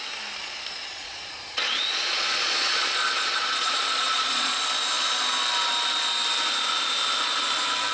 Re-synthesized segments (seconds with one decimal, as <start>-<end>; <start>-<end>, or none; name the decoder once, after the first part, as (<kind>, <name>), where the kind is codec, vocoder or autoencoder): 0.8-4.6 (vocoder, Vocos)